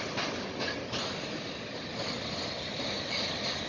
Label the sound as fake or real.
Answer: real